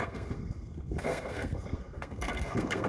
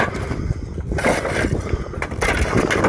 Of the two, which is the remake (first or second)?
first